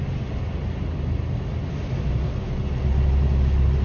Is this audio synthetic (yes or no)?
no